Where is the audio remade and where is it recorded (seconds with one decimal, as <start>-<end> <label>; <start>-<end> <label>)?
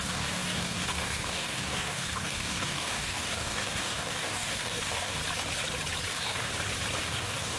0.0-5.2 remade; 5.2-6.1 recorded; 6.1-6.5 remade; 6.5-7.0 recorded; 7.0-7.6 remade